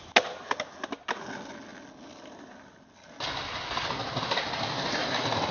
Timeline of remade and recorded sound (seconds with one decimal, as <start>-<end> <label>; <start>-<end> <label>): 0.0-5.5 recorded

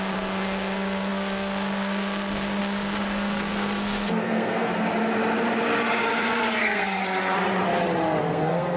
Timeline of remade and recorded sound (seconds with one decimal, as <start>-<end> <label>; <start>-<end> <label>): 0.0-4.7 remade; 4.7-6.6 recorded; 6.6-7.0 remade; 7.0-8.2 recorded; 8.2-8.8 remade

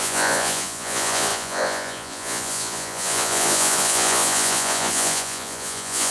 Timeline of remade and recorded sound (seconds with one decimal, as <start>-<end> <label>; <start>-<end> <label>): 0.0-6.1 remade

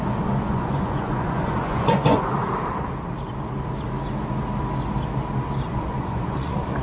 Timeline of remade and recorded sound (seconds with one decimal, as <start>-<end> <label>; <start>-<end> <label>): 0.0-2.4 remade; 2.4-5.7 recorded; 5.7-6.8 remade

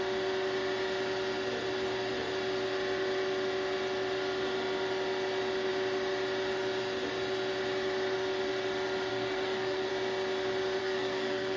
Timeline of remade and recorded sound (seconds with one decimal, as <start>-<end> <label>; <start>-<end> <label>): 0.0-9.1 recorded; 9.1-9.9 remade; 9.9-10.8 recorded; 10.8-11.6 remade

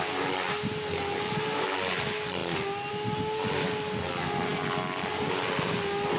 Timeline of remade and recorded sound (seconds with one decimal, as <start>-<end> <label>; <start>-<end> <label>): 0.0-6.2 recorded

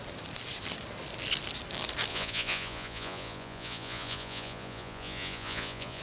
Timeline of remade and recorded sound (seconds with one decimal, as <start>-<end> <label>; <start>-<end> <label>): 0.0-2.1 recorded; 2.1-6.0 remade